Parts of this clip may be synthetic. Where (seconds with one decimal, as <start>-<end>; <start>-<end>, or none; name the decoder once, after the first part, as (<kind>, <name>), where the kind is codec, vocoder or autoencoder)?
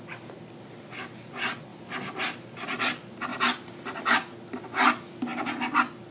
none